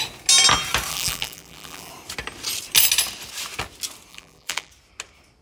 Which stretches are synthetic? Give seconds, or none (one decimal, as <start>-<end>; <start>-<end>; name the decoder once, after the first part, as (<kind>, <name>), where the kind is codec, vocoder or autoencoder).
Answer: 0.9-1.9 (vocoder, BigVGAN v2); 4.1-4.7